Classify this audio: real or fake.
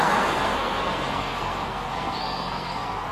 fake